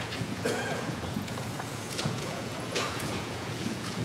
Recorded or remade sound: remade